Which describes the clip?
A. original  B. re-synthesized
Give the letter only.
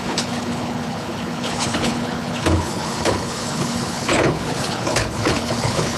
B